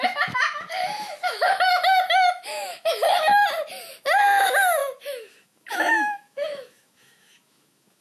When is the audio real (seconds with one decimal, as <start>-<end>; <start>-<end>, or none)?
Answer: 3.4-3.9